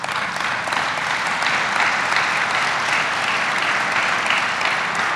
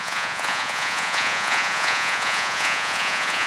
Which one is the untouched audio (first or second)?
first